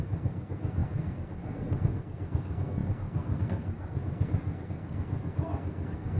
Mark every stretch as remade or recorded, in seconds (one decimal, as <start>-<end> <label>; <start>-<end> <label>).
0.0-6.2 remade